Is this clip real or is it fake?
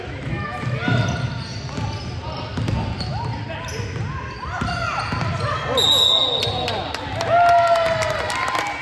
real